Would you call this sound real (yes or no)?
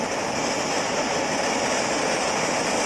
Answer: yes